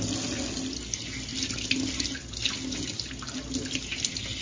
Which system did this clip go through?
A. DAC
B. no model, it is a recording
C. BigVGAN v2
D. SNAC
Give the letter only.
B